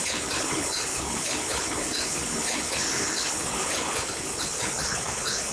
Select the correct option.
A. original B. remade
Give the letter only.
B